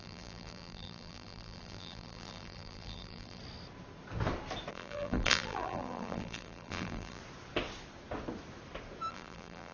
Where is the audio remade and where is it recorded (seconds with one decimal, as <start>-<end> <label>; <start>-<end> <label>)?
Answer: 0.0-3.4 remade; 3.4-4.7 recorded; 4.7-7.2 remade; 7.2-9.1 recorded; 9.1-9.7 remade

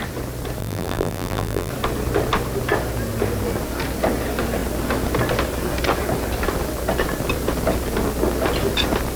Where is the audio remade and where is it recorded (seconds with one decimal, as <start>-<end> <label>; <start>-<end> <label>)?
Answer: 0.0-0.6 recorded; 0.6-1.7 remade; 1.7-9.2 recorded

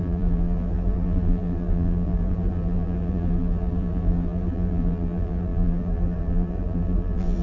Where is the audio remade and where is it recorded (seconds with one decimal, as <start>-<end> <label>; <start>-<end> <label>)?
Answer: 0.0-7.4 remade

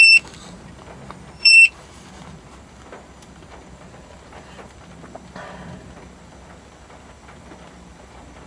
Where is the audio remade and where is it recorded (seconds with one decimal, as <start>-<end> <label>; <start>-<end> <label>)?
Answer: 0.0-8.5 remade

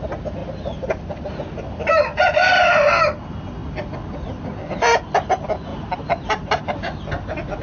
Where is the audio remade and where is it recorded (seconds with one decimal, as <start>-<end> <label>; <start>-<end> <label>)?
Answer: 0.0-0.4 recorded; 0.4-2.9 remade; 2.9-5.7 recorded; 5.7-7.0 remade; 7.0-7.6 recorded